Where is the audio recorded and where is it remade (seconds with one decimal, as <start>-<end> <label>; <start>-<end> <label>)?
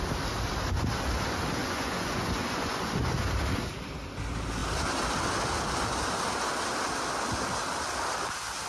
0.0-1.6 recorded; 1.6-3.1 remade; 3.1-8.7 recorded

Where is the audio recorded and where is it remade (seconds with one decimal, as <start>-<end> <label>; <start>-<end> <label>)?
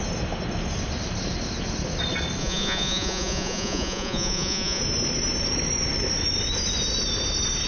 0.0-2.4 recorded; 2.4-4.8 remade; 4.8-7.7 recorded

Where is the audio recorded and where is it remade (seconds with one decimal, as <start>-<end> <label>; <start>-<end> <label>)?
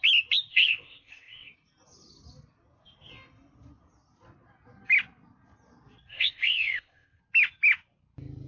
0.0-0.5 recorded; 0.5-1.5 remade; 1.5-6.1 recorded; 6.1-7.2 remade; 7.2-8.5 recorded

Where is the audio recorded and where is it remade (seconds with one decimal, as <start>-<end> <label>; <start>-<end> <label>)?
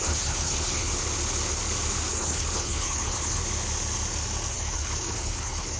0.0-0.9 remade; 0.9-2.1 recorded; 2.1-3.4 remade; 3.4-4.5 recorded; 4.5-5.8 remade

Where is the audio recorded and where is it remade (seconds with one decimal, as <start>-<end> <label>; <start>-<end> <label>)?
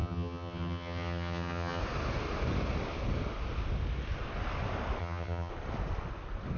0.0-1.8 remade; 1.8-5.0 recorded; 5.0-5.5 remade; 5.5-6.6 recorded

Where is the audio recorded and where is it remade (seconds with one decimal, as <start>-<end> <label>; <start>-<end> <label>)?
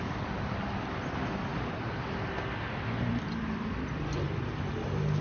0.0-1.5 recorded; 1.5-4.6 remade; 4.6-5.2 recorded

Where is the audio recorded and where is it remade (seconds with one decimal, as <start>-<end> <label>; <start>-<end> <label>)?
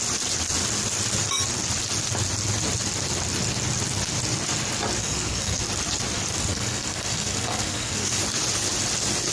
0.0-5.0 recorded; 5.0-5.6 remade; 5.6-6.5 recorded; 6.5-8.2 remade; 8.2-9.3 recorded